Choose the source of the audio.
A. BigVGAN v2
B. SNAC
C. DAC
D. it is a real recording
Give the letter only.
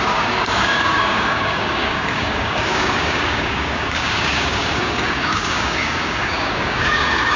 C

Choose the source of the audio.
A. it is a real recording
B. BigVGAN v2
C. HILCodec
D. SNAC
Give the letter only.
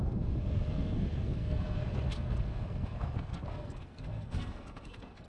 D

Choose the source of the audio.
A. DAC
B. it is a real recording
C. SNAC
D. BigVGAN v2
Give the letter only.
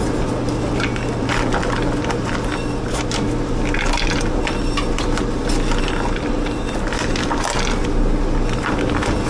B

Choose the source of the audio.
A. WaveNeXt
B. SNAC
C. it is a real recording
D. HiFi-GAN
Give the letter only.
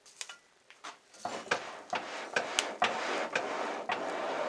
C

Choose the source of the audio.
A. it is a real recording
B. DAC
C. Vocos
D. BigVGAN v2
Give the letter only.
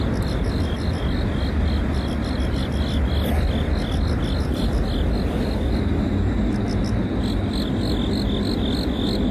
A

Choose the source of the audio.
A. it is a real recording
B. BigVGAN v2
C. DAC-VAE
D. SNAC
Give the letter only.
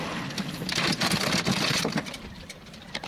A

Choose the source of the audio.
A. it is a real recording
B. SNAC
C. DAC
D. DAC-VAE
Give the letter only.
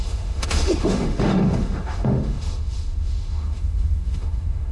D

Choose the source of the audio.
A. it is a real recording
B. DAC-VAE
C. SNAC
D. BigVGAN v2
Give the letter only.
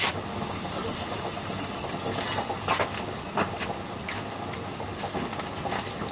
A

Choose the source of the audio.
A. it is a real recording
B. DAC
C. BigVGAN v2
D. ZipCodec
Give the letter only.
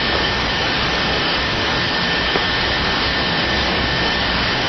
B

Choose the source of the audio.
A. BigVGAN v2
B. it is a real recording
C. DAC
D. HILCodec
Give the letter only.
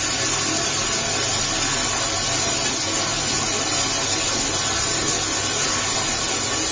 B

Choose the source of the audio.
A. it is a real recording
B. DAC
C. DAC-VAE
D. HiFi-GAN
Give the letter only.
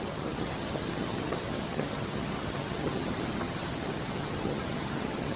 D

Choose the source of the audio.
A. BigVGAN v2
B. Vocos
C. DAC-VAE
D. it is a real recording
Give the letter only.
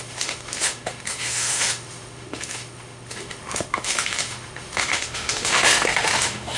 C